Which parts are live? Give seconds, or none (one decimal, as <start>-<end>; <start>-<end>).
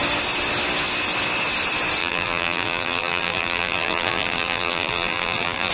0.0-2.0